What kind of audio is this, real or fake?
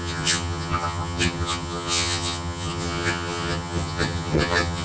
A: fake